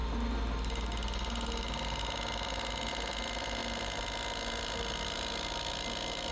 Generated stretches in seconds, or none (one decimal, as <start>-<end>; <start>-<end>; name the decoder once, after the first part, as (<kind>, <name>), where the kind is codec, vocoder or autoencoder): none